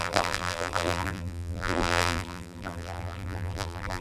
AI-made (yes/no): yes